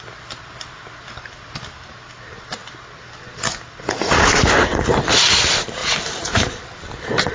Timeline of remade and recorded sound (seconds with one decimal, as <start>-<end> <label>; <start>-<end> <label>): 0.0-7.3 recorded